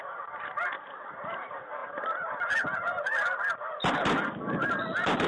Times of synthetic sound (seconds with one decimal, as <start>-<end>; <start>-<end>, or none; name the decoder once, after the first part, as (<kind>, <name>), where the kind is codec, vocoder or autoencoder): none